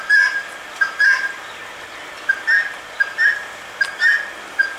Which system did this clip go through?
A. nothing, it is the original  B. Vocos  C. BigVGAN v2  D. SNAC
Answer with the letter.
A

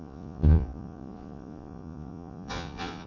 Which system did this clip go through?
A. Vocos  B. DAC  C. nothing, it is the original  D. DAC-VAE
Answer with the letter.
A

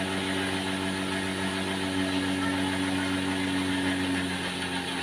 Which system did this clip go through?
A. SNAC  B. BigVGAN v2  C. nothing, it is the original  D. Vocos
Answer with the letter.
C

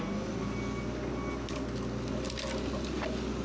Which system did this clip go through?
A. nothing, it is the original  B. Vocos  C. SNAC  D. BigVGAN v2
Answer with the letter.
A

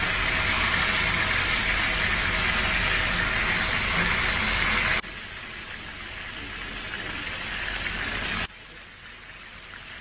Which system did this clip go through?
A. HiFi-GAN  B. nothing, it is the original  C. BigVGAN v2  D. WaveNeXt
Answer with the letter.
B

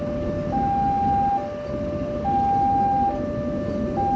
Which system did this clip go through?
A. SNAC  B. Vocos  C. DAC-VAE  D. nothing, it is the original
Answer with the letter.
D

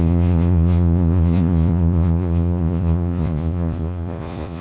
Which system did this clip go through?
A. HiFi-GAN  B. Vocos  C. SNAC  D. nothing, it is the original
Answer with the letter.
B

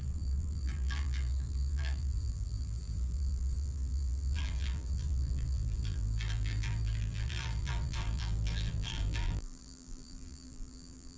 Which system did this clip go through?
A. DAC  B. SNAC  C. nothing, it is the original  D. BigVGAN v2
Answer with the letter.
D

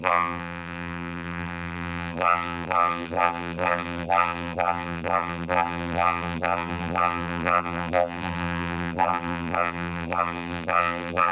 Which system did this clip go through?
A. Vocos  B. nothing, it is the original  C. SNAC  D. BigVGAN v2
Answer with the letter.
D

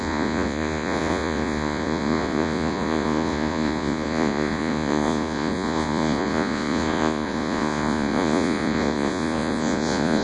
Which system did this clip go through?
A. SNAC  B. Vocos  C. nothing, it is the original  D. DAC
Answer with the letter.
B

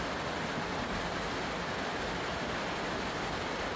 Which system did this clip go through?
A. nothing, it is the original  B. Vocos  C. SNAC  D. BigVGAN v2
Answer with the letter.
A